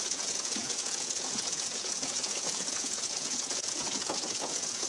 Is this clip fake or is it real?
fake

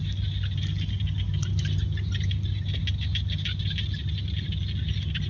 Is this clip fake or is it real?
real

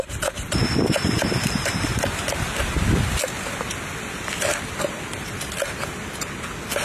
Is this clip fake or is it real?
real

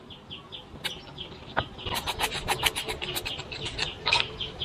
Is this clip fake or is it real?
real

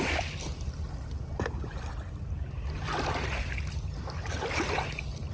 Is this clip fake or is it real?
real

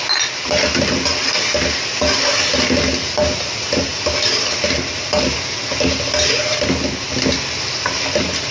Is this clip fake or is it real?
real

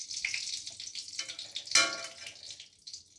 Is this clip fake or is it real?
real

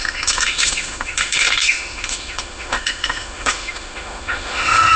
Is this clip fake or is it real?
fake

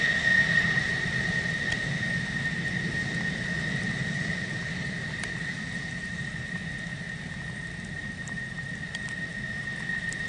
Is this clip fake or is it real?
real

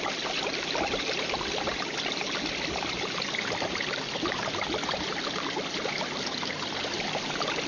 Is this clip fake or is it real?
real